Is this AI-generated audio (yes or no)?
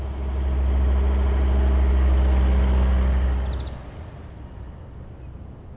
no